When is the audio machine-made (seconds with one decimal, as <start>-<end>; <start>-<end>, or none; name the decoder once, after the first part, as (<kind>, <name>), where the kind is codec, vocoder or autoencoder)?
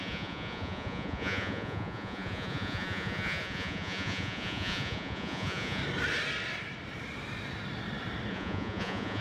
0.0-5.8 (vocoder, Vocos); 8.3-9.2